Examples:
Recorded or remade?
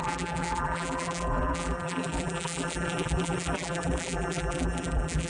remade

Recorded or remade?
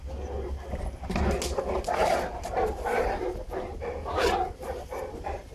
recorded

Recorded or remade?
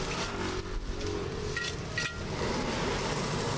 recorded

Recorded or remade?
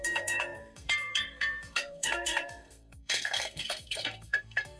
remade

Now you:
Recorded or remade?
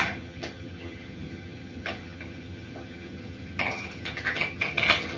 remade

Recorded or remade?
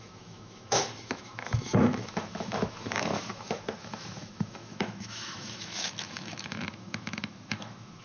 remade